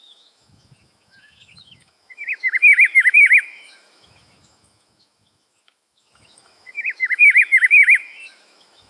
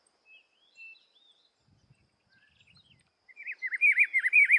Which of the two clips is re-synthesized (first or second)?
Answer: first